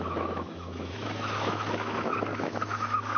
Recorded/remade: remade